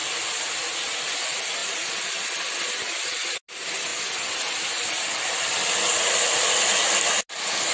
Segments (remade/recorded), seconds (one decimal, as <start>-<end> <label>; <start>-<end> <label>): 0.0-0.6 remade; 0.6-1.6 recorded; 1.6-3.1 remade; 3.1-7.7 recorded